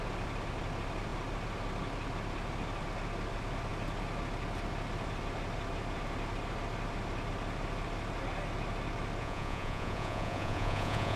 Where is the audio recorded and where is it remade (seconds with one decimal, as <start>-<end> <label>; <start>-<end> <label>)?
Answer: 0.0-9.2 recorded; 9.2-11.2 remade